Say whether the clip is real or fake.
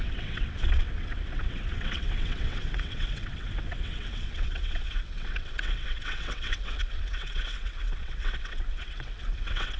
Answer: fake